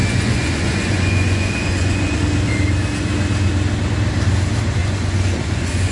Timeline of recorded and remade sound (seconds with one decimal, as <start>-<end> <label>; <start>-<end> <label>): 0.0-2.2 remade; 2.2-4.8 recorded; 4.8-5.9 remade